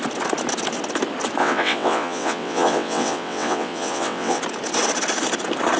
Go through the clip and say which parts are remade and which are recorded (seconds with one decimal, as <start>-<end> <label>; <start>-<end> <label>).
0.0-1.4 recorded; 1.4-4.4 remade; 4.4-5.8 recorded